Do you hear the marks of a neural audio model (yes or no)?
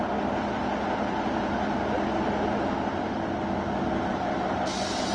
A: no